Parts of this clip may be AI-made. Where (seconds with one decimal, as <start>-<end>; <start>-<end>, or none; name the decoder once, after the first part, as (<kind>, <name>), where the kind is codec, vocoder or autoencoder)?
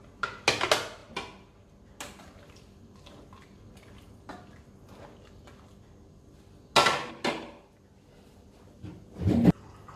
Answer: none